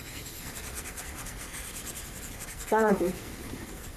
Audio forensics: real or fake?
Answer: fake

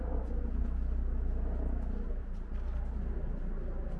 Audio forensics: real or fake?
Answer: real